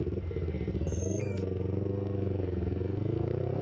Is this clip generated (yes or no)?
yes